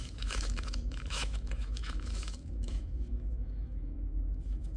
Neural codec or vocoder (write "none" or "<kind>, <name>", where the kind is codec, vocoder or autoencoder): autoencoder, DAC-VAE